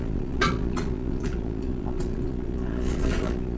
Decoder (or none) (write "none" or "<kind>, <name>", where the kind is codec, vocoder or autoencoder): vocoder, Vocos